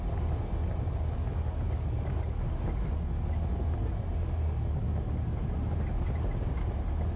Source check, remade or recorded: recorded